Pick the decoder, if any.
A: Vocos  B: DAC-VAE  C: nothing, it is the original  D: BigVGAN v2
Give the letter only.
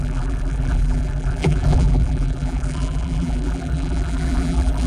D